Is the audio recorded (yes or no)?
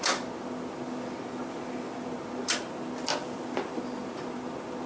yes